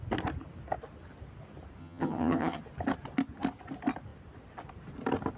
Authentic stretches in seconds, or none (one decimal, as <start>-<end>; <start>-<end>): 0.0-1.8; 2.6-5.4